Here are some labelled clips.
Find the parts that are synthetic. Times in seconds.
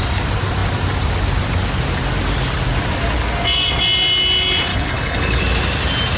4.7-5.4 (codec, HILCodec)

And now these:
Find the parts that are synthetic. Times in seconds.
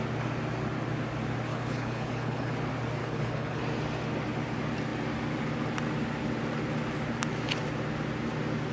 1.5-2.5 (codec, HILCodec); 3.0-3.6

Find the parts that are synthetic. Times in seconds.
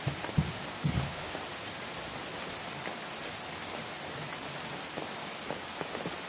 0.8-1.3 (codec, HILCodec)